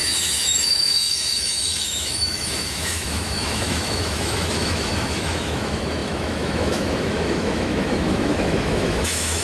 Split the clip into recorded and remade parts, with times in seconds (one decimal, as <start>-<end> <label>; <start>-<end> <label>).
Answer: 0.0-9.4 remade